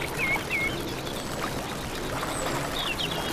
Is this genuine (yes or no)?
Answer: yes